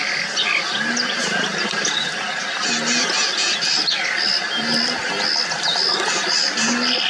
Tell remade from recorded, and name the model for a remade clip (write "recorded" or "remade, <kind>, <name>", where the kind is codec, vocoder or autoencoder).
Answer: recorded